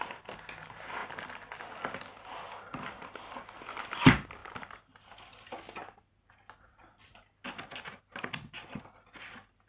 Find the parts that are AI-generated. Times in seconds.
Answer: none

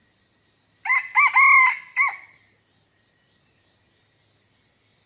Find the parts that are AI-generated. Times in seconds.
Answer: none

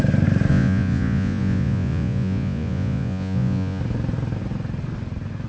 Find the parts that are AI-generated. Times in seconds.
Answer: 0.5-3.8

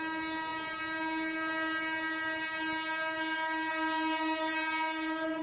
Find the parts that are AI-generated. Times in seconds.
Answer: none